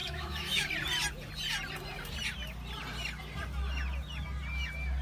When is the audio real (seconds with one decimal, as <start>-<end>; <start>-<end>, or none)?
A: 0.7-5.0